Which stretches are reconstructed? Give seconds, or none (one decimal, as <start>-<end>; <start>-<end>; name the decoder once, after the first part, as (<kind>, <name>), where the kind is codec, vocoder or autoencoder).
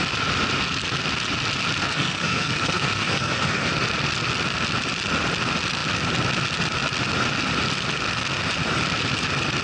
1.8-3.7 (codec, SNAC)